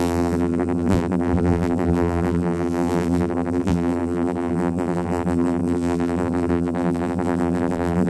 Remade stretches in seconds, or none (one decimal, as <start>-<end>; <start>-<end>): 0.0-8.1